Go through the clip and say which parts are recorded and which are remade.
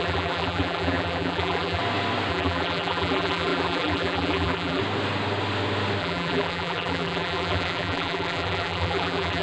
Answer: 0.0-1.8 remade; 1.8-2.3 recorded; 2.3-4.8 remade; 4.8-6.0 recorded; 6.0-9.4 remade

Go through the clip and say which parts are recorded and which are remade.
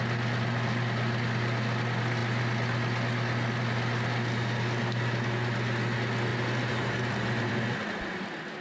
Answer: 0.0-6.3 recorded; 6.3-7.5 remade; 7.5-8.6 recorded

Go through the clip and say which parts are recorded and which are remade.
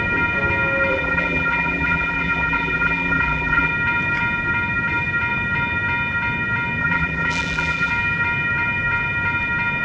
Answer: 0.0-0.9 recorded; 0.9-3.7 remade; 3.7-6.8 recorded; 6.8-7.9 remade; 7.9-9.8 recorded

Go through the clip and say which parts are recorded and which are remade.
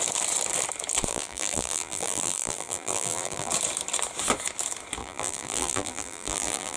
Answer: 0.0-1.1 recorded; 1.1-3.5 remade; 3.5-5.0 recorded; 5.0-6.8 remade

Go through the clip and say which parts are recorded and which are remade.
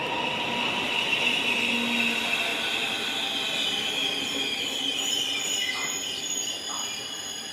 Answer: 0.0-7.5 recorded